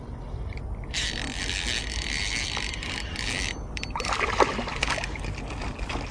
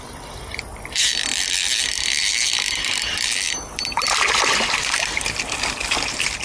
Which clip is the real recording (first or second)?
first